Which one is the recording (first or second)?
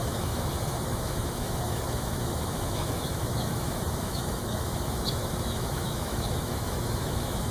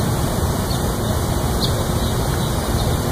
second